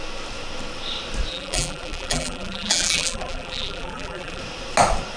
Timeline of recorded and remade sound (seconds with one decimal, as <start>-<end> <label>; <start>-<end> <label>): 0.0-1.3 recorded; 1.3-4.4 remade; 4.4-5.2 recorded

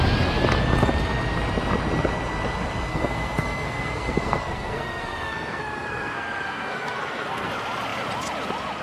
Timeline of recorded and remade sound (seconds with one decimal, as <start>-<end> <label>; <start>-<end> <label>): 0.0-2.9 recorded; 2.9-7.5 remade; 7.5-8.8 recorded

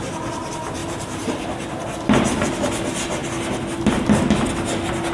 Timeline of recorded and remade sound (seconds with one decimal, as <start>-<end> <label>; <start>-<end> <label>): 0.0-0.8 recorded; 0.8-1.3 remade; 1.3-5.1 recorded

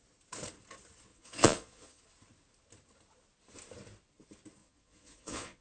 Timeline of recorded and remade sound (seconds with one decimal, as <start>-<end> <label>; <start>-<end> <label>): 0.0-1.1 recorded; 1.1-2.0 remade; 2.0-4.6 recorded; 4.6-5.6 remade

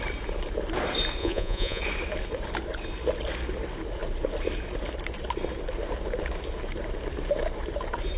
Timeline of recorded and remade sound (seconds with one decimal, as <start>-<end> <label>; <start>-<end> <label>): 0.0-1.2 recorded; 1.2-1.8 remade; 1.8-8.2 recorded

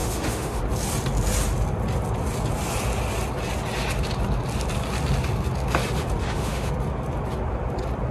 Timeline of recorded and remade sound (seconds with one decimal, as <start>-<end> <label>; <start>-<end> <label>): 0.0-0.6 remade; 0.6-6.2 recorded; 6.2-6.7 remade; 6.7-8.1 recorded